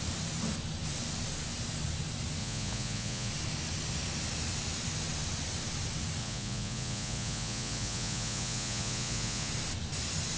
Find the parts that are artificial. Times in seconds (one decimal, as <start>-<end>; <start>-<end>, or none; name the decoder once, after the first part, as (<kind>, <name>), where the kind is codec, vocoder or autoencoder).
2.4-3.3 (vocoder, Vocos); 6.2-9.5